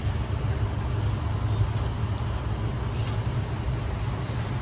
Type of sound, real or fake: real